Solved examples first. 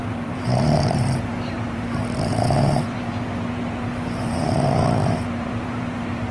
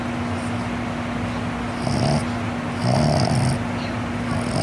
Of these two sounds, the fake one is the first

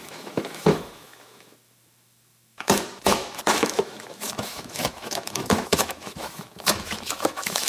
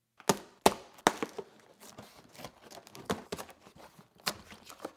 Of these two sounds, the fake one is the first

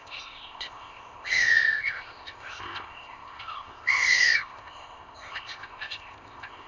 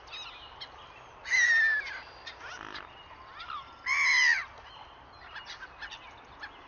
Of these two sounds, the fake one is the first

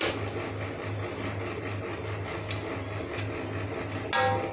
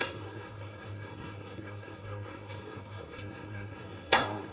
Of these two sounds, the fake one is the second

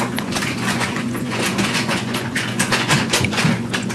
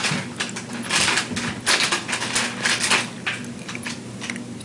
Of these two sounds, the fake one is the first